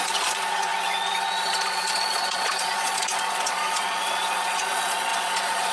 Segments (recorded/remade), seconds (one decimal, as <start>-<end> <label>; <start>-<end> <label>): 0.0-5.7 remade